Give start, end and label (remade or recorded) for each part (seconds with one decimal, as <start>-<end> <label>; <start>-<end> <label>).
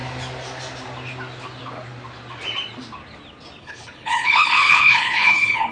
0.0-3.6 recorded; 3.6-5.7 remade